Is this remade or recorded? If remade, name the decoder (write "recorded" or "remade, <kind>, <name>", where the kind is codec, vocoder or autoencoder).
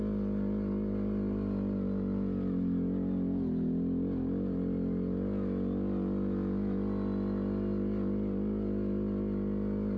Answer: recorded